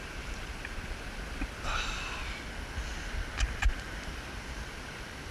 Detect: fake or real real